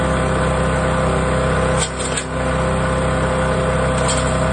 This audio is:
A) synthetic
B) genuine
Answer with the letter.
B